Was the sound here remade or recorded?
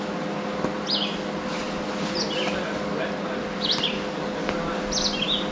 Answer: recorded